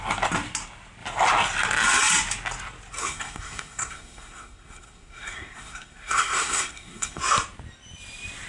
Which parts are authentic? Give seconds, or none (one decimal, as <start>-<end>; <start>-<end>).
0.0-3.0; 7.2-8.5